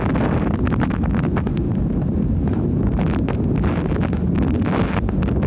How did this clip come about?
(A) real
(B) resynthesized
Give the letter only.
A